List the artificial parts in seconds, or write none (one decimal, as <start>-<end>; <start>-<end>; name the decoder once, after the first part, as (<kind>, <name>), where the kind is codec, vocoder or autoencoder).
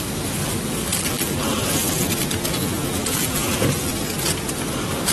0.9-2.1 (vocoder, BigVGAN v2); 2.6-3.9